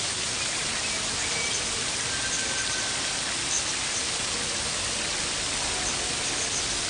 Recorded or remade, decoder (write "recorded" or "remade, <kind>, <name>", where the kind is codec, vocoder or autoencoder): recorded